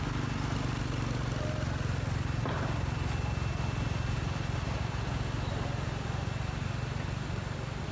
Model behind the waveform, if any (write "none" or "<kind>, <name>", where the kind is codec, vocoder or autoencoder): none